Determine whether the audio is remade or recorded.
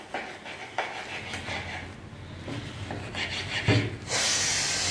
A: recorded